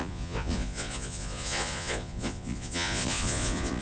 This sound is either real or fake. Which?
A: fake